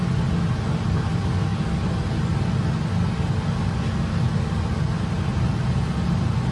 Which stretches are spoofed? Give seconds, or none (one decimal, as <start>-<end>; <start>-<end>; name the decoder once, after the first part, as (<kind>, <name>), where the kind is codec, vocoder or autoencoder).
none